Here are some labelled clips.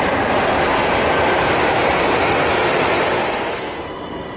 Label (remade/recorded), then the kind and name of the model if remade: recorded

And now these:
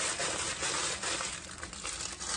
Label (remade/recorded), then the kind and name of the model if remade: recorded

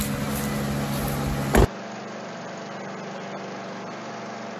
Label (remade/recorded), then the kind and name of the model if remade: recorded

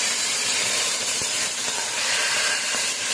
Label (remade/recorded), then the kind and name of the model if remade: remade, vocoder, BigVGAN v2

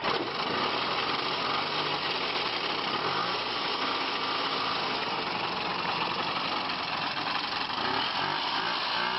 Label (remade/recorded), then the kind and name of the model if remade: recorded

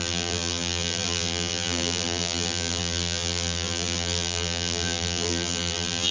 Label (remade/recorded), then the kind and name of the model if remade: remade, vocoder, BigVGAN v2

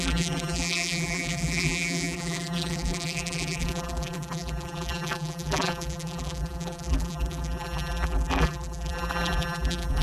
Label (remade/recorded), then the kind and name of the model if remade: remade, vocoder, BigVGAN v2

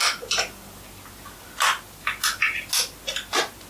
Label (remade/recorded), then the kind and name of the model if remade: recorded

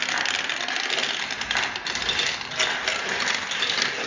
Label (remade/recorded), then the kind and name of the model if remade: recorded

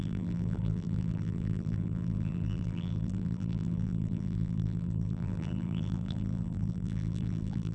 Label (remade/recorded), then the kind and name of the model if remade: remade, vocoder, BigVGAN v2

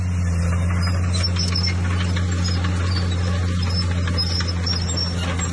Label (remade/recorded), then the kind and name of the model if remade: recorded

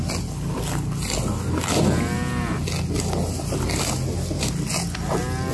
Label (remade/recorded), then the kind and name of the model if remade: recorded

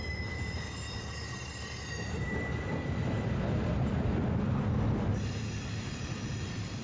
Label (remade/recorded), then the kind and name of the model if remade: remade, vocoder, BigVGAN v2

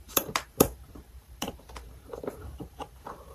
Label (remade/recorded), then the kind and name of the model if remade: remade, vocoder, BigVGAN v2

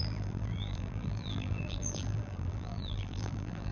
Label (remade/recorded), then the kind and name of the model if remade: remade, vocoder, BigVGAN v2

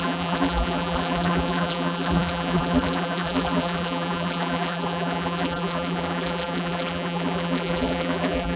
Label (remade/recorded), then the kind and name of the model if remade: remade, vocoder, BigVGAN v2